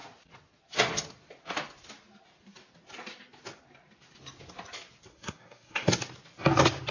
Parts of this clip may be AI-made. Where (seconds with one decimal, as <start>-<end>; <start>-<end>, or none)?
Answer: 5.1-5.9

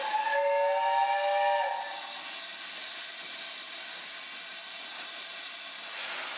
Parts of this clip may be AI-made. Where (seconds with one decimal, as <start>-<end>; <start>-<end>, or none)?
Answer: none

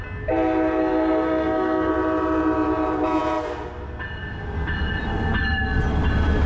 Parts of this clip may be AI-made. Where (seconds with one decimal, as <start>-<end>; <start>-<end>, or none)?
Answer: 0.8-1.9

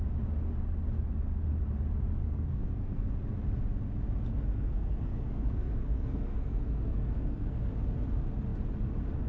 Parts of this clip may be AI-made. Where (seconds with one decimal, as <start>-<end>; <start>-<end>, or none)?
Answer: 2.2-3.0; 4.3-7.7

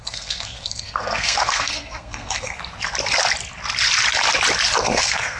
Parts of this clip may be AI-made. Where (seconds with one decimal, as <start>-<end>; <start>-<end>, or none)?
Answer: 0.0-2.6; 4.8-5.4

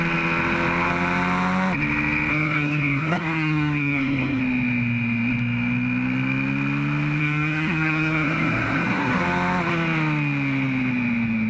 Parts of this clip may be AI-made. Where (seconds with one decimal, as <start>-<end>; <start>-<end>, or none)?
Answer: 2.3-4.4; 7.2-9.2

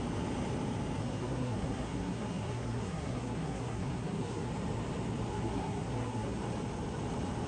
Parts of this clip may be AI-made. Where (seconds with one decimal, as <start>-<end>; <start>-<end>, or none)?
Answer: 1.0-4.5; 5.3-6.4